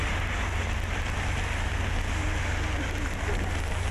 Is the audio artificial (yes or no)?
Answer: no